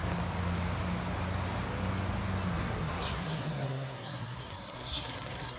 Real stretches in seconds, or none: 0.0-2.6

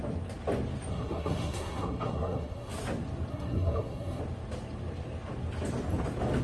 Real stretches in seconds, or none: 0.0-0.9; 2.7-3.3; 4.2-6.4

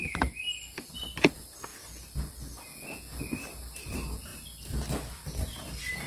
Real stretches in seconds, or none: 0.0-6.1

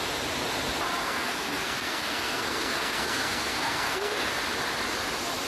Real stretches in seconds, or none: 0.0-1.0; 4.3-5.5

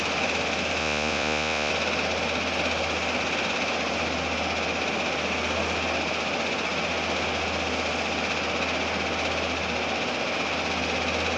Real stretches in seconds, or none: 0.0-0.8; 1.7-11.4